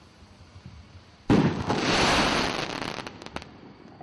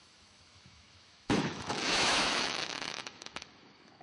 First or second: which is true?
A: first